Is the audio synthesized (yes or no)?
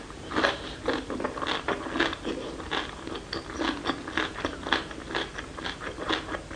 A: no